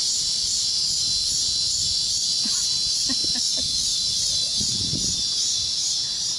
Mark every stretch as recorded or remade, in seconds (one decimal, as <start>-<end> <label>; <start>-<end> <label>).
0.0-6.4 remade